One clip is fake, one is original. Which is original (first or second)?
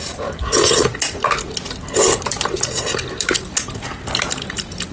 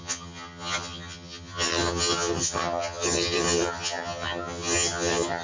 first